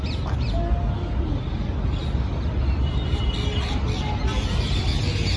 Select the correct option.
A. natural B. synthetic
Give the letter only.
A